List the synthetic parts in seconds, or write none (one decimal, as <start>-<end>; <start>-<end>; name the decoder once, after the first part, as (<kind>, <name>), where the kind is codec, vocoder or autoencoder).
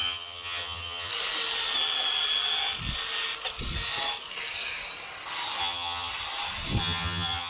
0.0-1.1 (vocoder, HiFi-GAN); 5.6-6.1; 6.8-7.5